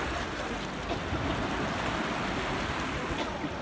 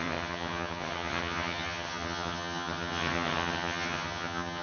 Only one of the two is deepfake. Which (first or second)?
second